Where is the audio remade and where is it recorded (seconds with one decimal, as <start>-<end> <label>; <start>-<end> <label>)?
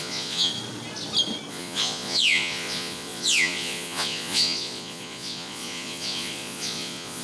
0.0-0.5 remade; 0.5-1.5 recorded; 1.5-7.2 remade